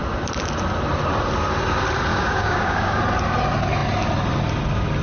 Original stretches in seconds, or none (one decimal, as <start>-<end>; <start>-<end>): 0.0-2.1; 3.0-5.0